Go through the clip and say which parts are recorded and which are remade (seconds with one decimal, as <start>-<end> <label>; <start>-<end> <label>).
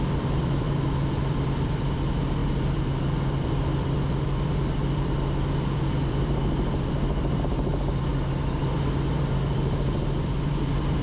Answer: 0.0-8.1 remade; 8.1-9.3 recorded; 9.3-11.0 remade